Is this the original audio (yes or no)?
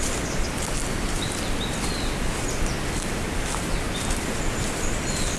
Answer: yes